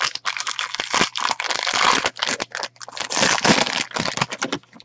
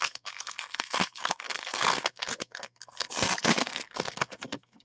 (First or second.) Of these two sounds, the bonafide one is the first